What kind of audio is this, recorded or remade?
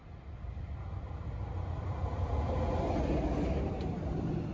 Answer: recorded